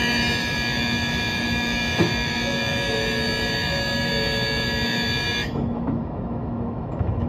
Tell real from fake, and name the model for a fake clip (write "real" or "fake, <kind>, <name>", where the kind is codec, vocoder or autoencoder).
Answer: fake, autoencoder, DAC-VAE